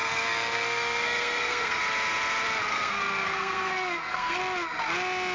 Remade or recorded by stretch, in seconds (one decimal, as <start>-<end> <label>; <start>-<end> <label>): 0.0-1.8 remade; 1.8-2.7 recorded; 2.7-4.4 remade; 4.4-5.3 recorded